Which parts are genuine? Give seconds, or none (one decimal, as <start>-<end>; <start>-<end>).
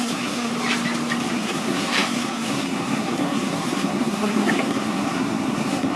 0.5-1.3